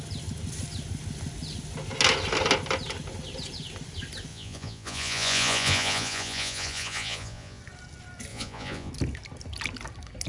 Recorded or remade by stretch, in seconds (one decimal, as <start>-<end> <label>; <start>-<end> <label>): 0.0-4.3 recorded; 4.3-7.6 remade; 7.6-8.3 recorded; 8.3-8.9 remade; 8.9-10.3 recorded